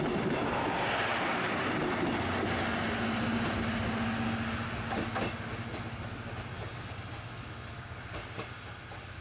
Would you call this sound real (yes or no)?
yes